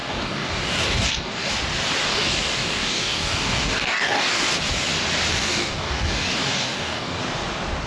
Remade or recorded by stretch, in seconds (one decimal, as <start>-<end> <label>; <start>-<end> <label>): 0.0-1.5 remade; 1.5-2.1 recorded; 2.1-4.5 remade; 4.5-5.3 recorded; 5.3-7.2 remade; 7.2-7.9 recorded